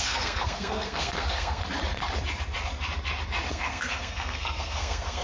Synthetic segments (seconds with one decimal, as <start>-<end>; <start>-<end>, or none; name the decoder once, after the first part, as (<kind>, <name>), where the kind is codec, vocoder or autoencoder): 0.0-1.6 (codec, SNAC); 3.5-5.2